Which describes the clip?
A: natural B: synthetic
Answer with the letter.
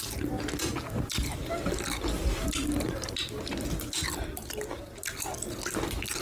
A